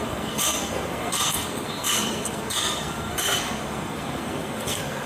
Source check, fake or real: fake